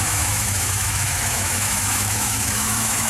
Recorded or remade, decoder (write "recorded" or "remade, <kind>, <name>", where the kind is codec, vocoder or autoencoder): remade, autoencoder, DAC-VAE